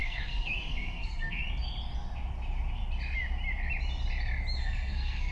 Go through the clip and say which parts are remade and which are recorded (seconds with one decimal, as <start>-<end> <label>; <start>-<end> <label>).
0.0-1.4 remade; 1.4-4.6 recorded; 4.6-5.3 remade